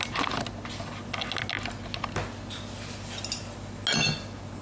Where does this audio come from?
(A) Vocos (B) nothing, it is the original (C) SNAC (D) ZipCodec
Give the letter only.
B